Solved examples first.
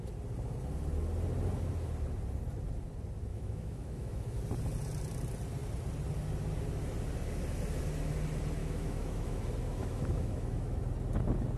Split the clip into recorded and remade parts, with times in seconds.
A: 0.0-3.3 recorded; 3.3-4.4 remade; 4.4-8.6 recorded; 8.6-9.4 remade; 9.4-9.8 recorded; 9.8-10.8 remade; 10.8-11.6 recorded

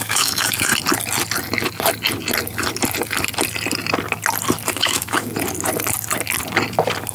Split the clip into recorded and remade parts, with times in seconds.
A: 0.0-0.7 remade; 0.7-4.7 recorded; 4.7-5.3 remade; 5.3-7.1 recorded

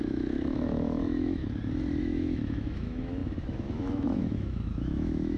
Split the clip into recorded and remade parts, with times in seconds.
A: 0.0-1.4 remade; 1.4-2.0 recorded; 2.0-5.4 remade